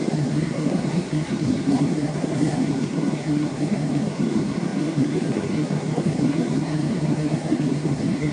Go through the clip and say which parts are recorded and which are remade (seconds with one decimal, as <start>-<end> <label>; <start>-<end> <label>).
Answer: 0.0-8.3 remade